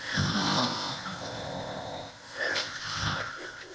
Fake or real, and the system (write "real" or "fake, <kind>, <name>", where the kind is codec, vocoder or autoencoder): fake, codec, ZipCodec